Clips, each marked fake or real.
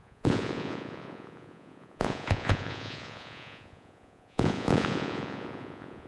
fake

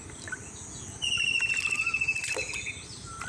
real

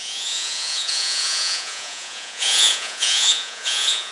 fake